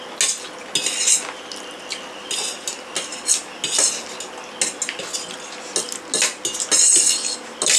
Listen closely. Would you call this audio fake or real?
real